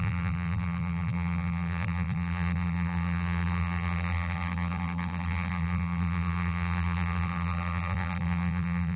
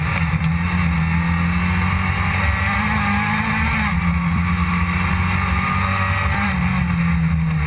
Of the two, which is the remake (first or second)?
first